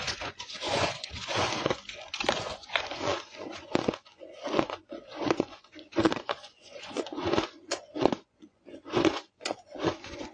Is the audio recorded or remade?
remade